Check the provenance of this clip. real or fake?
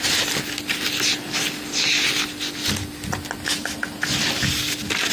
real